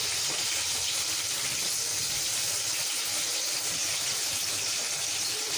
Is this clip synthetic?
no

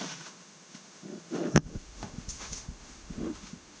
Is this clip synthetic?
yes